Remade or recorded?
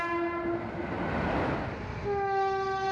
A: recorded